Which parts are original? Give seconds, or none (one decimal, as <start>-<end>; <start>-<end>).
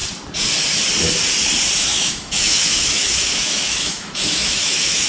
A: 0.0-1.9